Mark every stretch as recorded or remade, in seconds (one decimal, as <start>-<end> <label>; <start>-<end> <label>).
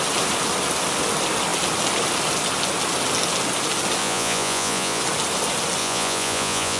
0.0-4.0 recorded; 4.0-5.0 remade; 5.0-5.8 recorded; 5.8-6.8 remade